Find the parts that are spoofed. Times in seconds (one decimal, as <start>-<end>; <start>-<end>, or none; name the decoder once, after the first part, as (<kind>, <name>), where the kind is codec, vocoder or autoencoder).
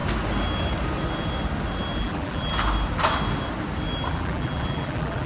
2.0-2.5 (vocoder, BigVGAN v2); 4.1-5.3